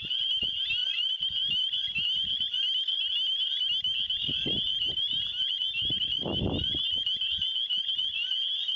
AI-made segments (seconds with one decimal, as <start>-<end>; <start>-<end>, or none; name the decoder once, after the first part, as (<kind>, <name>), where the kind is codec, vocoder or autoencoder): none